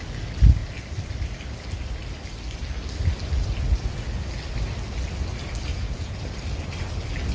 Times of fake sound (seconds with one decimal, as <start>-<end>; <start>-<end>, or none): 5.7-6.2